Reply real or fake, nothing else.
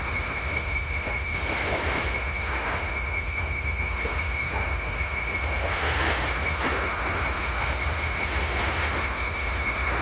fake